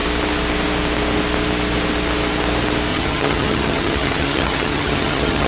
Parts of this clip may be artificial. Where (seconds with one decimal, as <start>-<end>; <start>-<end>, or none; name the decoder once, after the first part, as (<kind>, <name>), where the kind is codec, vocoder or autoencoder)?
2.9-5.5 (vocoder, HiFi-GAN)

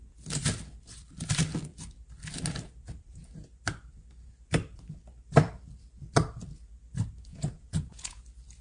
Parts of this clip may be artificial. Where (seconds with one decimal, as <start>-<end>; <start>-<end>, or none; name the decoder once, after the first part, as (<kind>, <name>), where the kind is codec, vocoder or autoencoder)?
7.3-8.2 (vocoder, Vocos)

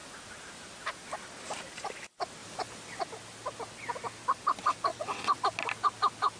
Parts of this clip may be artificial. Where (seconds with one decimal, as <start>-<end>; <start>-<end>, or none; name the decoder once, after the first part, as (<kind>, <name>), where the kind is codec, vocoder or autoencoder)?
4.9-5.4 (vocoder, WaveNeXt)

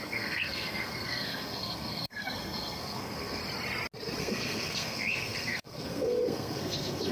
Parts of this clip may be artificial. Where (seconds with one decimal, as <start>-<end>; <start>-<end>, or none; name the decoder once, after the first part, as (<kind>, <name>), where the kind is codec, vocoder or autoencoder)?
0.0-3.4 (codec, SNAC); 4.2-7.1

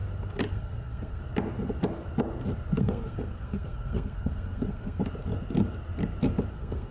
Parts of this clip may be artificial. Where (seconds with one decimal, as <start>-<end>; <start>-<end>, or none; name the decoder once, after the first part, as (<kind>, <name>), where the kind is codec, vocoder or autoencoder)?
0.5-1.2 (codec, SNAC); 2.8-5.0; 6.5-6.9